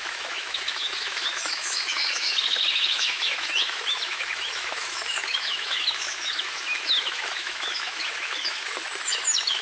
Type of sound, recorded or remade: remade